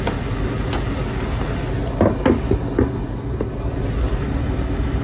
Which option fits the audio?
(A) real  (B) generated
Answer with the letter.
A